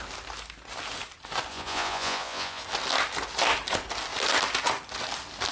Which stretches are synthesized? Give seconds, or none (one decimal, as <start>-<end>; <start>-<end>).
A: 1.5-2.6